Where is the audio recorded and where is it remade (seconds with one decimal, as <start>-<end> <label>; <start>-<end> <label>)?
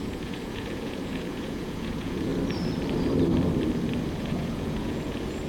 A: 0.0-2.3 remade; 2.3-4.2 recorded; 4.2-5.5 remade